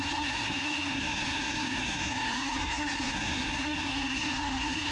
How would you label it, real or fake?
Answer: fake